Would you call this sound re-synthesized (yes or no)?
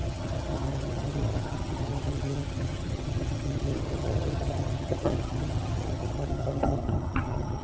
yes